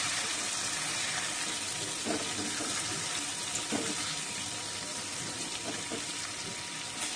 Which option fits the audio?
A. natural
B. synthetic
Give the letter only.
A